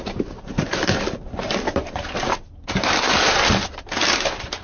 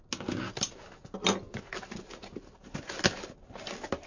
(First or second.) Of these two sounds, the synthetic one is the first